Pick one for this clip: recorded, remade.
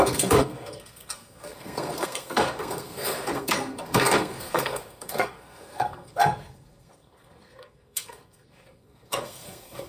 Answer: remade